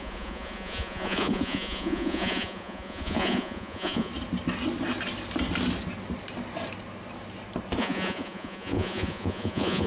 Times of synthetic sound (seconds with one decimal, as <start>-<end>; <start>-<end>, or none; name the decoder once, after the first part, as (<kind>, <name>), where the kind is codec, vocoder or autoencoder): 0.0-4.1 (vocoder, Vocos); 7.8-9.9